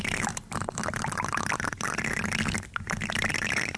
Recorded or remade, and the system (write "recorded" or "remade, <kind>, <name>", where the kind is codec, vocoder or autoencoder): recorded